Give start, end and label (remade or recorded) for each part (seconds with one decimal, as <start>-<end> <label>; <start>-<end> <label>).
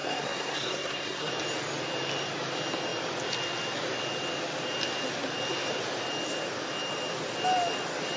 0.0-1.3 remade; 1.3-8.2 recorded